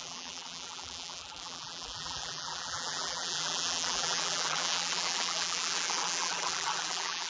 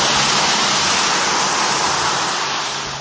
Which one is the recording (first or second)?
second